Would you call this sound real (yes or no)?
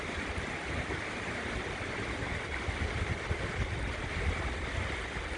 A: yes